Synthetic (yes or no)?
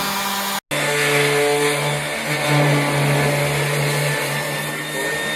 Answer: no